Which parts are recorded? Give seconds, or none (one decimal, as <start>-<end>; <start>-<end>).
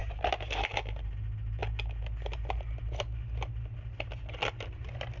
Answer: 0.7-5.2